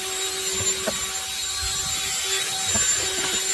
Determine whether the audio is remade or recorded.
recorded